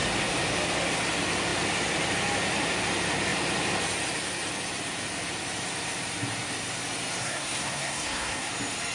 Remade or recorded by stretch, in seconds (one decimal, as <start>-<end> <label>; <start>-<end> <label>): 0.0-7.2 recorded; 7.2-8.5 remade; 8.5-8.9 recorded